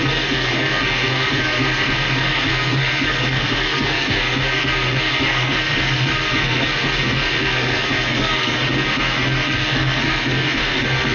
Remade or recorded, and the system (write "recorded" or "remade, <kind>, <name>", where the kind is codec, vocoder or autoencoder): remade, codec, SNAC